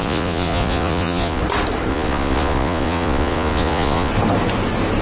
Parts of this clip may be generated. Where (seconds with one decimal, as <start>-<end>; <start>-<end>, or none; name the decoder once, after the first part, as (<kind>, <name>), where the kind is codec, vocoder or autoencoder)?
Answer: 0.0-1.4 (vocoder, Vocos); 1.9-4.1